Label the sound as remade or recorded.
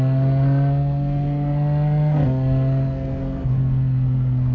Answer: remade